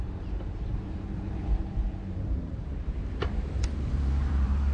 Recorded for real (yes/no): no